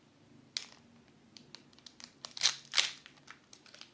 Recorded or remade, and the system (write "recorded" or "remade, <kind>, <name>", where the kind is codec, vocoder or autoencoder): recorded